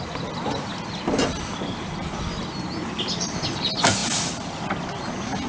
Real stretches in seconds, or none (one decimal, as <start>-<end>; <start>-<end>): 0.0-5.5